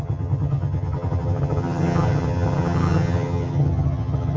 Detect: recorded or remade remade